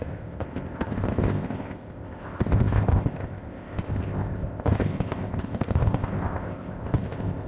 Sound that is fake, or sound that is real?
fake